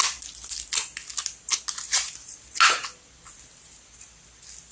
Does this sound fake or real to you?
real